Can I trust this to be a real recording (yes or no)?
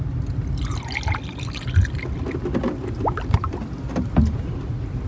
yes